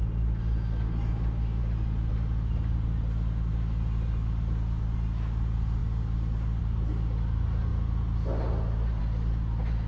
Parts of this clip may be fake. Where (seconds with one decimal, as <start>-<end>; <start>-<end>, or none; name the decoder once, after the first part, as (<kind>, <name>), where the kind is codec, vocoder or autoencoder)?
none